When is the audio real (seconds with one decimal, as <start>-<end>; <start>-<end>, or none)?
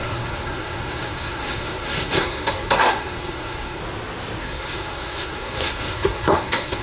3.8-4.4